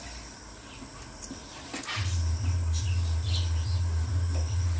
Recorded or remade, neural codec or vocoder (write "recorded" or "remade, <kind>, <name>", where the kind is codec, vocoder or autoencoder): recorded